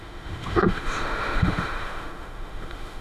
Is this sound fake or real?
fake